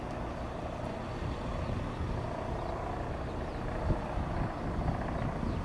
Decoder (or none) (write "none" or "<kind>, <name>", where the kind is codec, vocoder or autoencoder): none